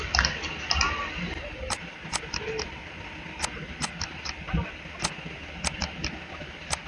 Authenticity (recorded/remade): recorded